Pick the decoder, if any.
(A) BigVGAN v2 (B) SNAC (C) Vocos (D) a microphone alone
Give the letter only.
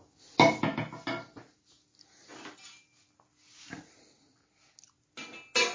D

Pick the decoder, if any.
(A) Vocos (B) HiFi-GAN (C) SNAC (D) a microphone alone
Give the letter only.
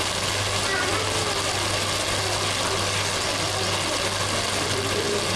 D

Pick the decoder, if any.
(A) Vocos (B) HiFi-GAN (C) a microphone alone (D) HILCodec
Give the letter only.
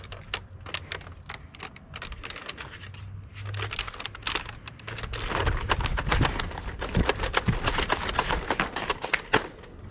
C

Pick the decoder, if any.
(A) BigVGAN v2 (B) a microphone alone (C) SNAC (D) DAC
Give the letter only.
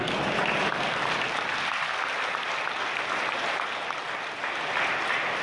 B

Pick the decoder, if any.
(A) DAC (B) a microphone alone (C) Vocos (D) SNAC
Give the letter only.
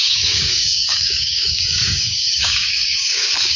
A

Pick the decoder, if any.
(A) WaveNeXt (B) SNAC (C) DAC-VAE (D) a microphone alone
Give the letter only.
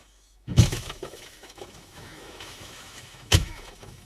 C